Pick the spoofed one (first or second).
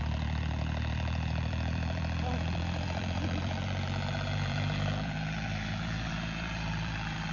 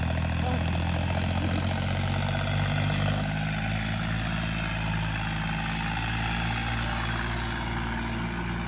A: first